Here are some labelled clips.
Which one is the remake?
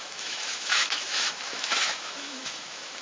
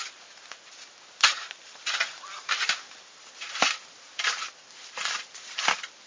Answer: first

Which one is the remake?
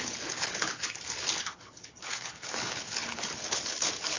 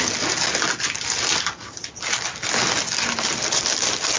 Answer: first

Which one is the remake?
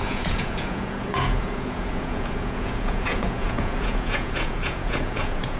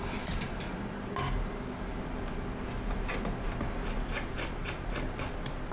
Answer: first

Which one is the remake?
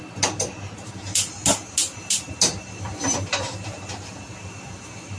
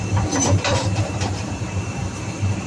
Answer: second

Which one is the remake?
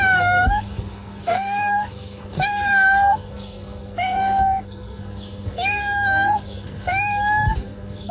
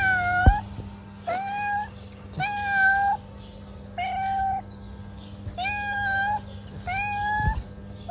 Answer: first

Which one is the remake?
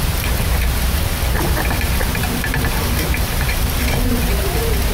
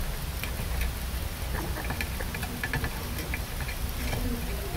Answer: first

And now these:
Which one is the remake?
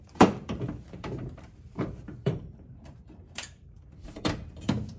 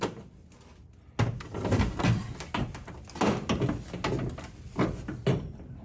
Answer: first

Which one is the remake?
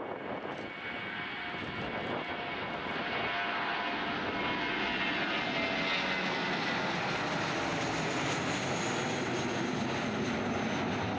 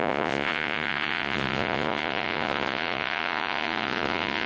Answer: second